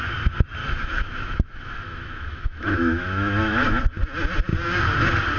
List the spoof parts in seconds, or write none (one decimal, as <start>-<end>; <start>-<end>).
0.6-3.8